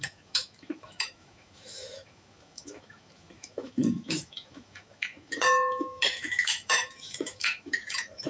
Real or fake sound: fake